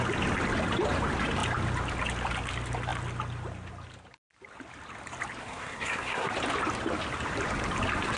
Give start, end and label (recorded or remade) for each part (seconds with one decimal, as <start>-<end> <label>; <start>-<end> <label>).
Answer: 0.0-5.4 recorded; 5.4-6.3 remade; 6.3-8.2 recorded